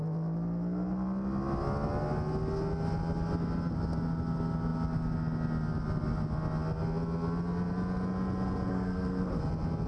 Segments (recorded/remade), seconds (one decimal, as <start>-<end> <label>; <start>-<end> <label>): 0.0-8.7 recorded; 8.7-9.4 remade; 9.4-9.9 recorded